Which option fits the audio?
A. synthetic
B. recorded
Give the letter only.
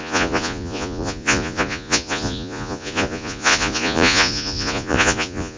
A